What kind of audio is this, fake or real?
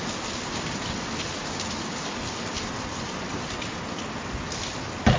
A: real